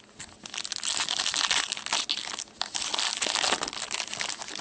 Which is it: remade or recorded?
recorded